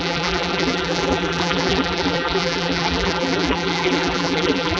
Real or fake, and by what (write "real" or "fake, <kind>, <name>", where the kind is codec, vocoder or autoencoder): fake, vocoder, BigVGAN v2